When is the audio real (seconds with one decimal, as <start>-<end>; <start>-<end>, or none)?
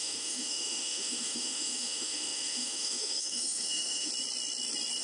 4.1-5.0